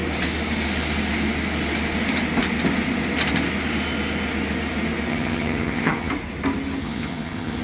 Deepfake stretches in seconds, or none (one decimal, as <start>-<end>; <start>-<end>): 5.1-6.1; 6.8-7.6